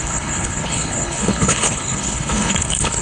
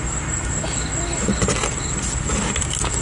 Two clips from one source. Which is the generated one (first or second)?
first